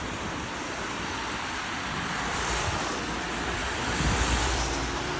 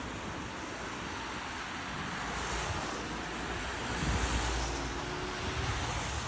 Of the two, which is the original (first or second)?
second